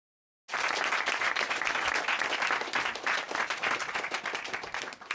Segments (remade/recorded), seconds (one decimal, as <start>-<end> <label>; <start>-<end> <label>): 0.0-5.1 recorded